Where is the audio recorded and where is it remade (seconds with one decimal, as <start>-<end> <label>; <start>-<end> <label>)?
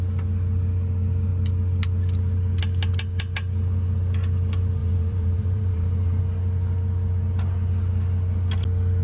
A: 0.0-4.8 recorded; 4.8-6.2 remade; 6.2-9.0 recorded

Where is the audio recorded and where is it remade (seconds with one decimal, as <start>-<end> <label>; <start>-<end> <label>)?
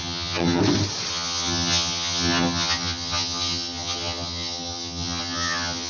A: 0.0-0.6 remade; 0.6-1.1 recorded; 1.1-5.9 remade